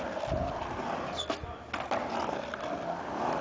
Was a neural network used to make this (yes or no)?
no